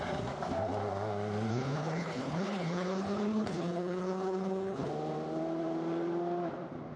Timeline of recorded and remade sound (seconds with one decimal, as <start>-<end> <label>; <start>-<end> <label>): 0.0-1.5 recorded; 1.5-4.9 remade; 4.9-7.0 recorded